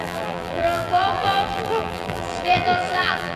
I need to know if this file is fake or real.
fake